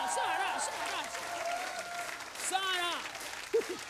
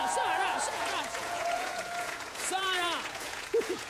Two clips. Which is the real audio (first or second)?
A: first